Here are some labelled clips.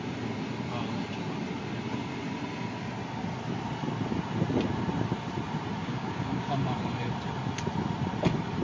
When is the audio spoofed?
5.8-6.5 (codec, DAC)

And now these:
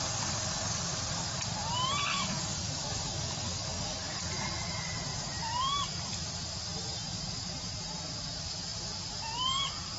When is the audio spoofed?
2.1-4.2 (codec, DAC)

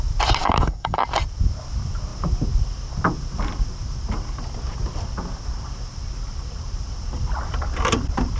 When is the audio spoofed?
0.4-1.0 (codec, DAC)